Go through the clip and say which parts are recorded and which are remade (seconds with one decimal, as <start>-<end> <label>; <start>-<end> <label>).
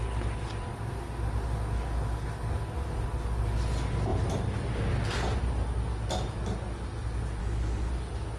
0.0-7.4 recorded; 7.4-7.9 remade; 7.9-8.4 recorded